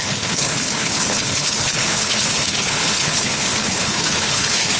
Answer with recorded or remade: remade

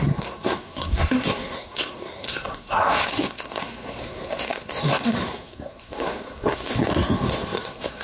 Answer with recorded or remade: remade